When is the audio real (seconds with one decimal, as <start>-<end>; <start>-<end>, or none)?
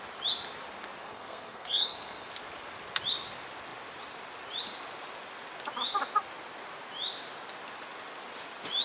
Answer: 0.0-1.0; 2.3-8.8